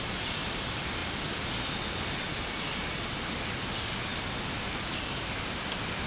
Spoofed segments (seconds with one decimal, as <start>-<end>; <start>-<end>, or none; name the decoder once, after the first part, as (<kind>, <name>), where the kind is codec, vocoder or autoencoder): none